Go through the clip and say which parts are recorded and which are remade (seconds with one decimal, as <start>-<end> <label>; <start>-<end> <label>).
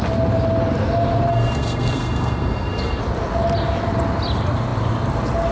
0.0-1.3 recorded; 1.3-3.0 remade; 3.0-5.5 recorded